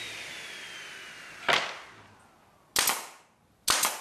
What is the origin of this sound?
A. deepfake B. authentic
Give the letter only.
B